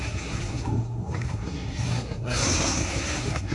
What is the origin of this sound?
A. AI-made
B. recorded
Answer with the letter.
A